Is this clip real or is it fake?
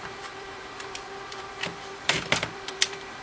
fake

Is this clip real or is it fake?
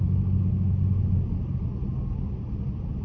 real